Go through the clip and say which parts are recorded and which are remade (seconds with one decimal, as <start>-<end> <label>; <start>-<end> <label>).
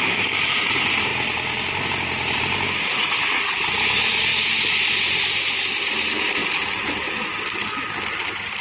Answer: 0.0-8.6 recorded